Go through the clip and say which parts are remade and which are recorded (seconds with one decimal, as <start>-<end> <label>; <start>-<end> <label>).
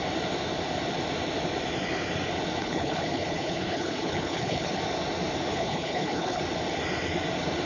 0.0-2.6 recorded; 2.6-4.8 remade; 4.8-5.5 recorded; 5.5-6.4 remade; 6.4-7.7 recorded